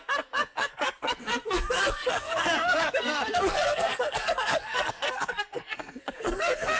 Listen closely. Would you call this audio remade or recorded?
remade